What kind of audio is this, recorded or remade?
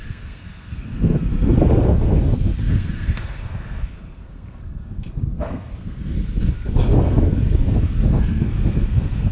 remade